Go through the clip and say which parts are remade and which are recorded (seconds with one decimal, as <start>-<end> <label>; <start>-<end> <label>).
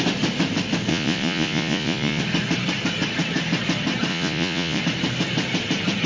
0.0-0.9 recorded; 0.9-2.2 remade; 2.2-4.1 recorded; 4.1-4.8 remade; 4.8-6.1 recorded